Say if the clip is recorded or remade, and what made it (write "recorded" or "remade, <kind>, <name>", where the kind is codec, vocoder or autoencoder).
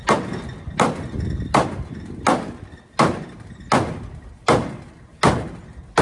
recorded